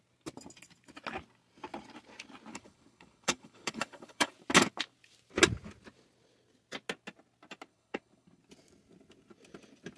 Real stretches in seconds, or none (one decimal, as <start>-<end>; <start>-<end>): 0.0-2.5; 4.3-7.7; 8.4-10.0